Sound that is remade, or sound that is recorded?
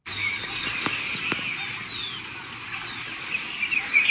recorded